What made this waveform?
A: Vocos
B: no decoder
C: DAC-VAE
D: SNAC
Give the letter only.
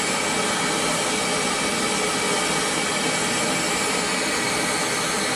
B